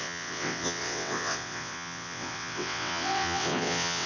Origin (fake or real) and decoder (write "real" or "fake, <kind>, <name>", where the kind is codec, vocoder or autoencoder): fake, vocoder, WaveNeXt